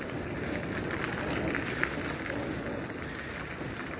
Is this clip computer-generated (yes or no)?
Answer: no